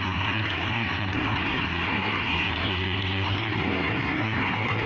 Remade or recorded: remade